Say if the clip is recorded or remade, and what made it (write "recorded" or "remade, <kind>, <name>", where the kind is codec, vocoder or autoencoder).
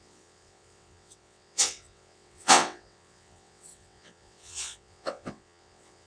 remade, vocoder, WaveNeXt